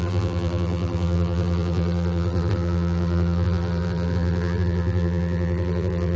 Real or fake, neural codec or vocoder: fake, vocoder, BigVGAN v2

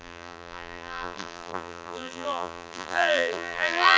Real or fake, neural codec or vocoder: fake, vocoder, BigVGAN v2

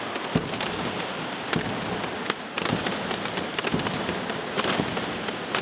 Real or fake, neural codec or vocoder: fake, vocoder, BigVGAN v2